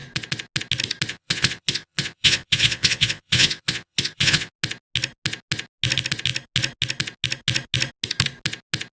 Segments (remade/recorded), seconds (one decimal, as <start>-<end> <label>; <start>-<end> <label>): 0.0-1.1 recorded; 1.1-4.5 remade; 4.5-8.9 recorded